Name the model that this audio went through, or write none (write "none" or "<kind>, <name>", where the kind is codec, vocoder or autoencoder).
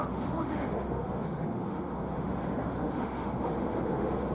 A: autoencoder, DAC-VAE